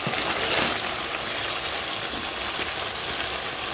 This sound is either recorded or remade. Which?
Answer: recorded